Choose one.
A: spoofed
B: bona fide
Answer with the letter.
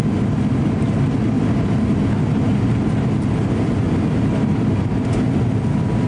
B